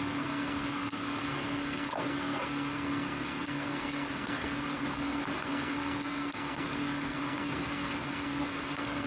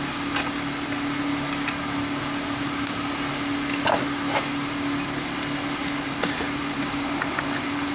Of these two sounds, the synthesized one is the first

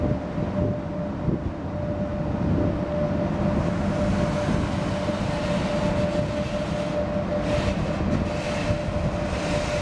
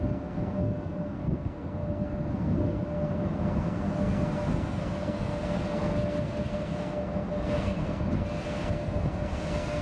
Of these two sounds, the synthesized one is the second